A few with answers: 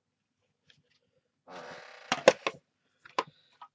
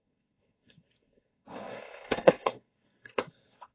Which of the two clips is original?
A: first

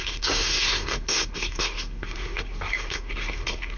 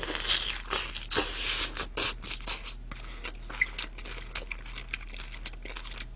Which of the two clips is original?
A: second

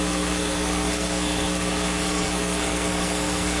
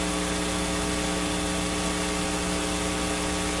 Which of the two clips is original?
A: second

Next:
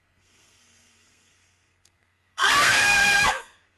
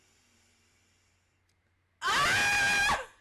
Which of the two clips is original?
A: second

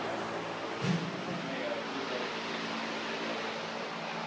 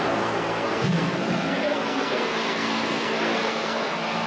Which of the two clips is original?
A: first